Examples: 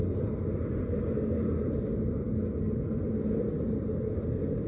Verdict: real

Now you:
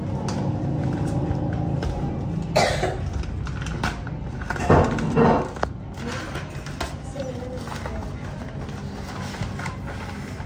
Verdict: real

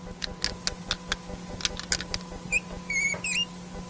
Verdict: real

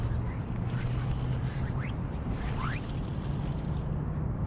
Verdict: fake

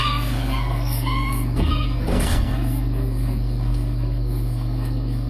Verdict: fake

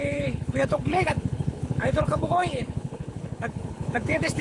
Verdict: fake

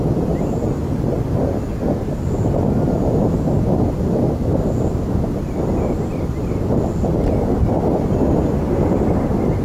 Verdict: real